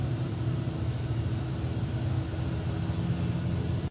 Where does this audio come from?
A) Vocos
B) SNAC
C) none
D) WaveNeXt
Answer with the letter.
C